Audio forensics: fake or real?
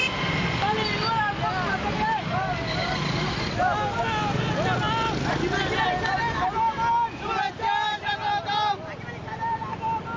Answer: real